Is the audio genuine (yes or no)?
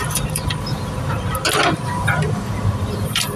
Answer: yes